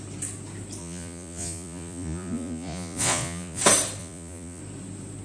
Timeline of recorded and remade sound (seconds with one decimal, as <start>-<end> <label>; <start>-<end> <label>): 0.0-0.8 recorded; 0.8-3.6 remade; 3.6-4.0 recorded; 4.0-4.6 remade; 4.6-5.2 recorded